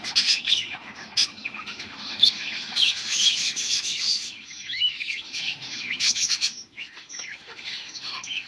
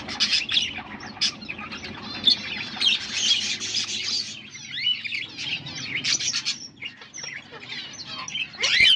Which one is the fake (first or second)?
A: first